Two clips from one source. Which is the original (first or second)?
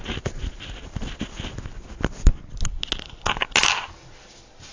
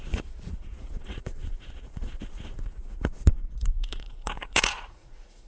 first